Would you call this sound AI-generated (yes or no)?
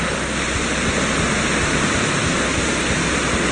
no